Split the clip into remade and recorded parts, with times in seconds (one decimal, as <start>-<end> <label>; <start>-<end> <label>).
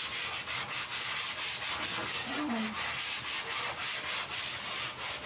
0.0-5.2 recorded